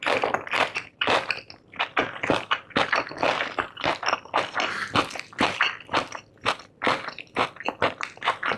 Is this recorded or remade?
recorded